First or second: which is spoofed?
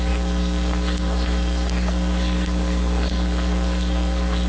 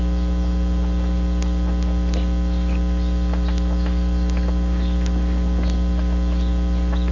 first